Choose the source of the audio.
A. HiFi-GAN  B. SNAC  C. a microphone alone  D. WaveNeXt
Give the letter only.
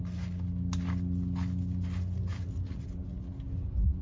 C